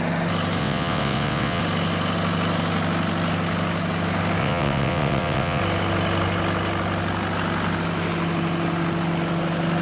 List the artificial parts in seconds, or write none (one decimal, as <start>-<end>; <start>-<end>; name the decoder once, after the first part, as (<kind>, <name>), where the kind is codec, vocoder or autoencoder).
0.6-1.6 (vocoder, WaveNeXt); 4.4-5.6